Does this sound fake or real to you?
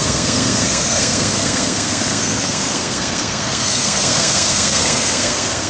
fake